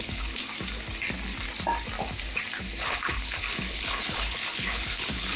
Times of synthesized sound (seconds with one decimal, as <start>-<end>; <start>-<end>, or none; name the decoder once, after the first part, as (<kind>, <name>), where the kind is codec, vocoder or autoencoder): 0.0-0.4 (codec, HILCodec); 2.6-5.4